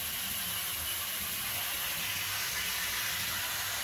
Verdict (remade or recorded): recorded